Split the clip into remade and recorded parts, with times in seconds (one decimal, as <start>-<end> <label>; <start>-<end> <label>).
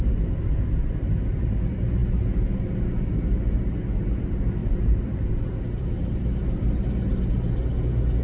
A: 0.0-4.6 recorded; 4.6-6.5 remade; 6.5-8.2 recorded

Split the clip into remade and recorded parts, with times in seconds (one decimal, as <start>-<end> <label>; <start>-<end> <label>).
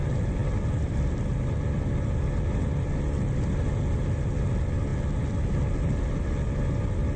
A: 0.0-7.2 recorded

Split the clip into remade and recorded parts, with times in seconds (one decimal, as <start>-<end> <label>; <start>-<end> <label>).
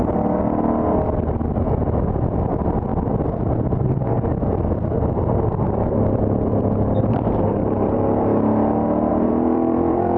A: 0.0-2.9 recorded; 2.9-7.3 remade; 7.3-9.1 recorded; 9.1-10.2 remade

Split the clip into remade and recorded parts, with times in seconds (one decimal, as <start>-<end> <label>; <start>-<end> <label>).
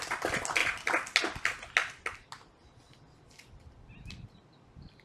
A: 0.0-5.0 recorded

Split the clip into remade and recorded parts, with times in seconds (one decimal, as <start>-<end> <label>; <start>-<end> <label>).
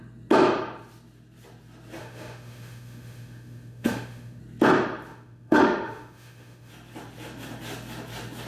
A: 0.0-2.0 recorded; 2.0-4.4 remade; 4.4-5.1 recorded; 5.1-6.7 remade; 6.7-8.5 recorded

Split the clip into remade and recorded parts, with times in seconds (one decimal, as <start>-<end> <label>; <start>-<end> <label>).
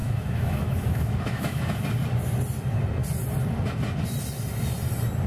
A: 0.0-1.8 remade; 1.8-5.3 recorded